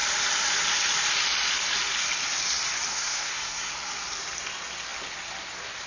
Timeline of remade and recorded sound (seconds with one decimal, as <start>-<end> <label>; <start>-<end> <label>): 0.0-2.9 recorded; 2.9-3.7 remade; 3.7-5.9 recorded